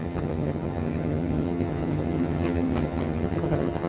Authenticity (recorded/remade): remade